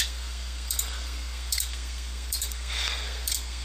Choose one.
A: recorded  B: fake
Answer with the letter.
B